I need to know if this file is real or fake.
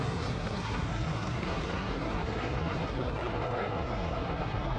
fake